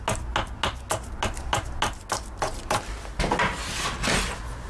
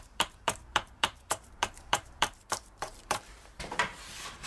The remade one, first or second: second